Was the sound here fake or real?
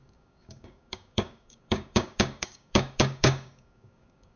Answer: fake